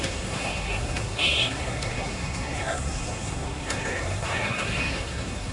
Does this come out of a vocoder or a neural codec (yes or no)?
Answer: yes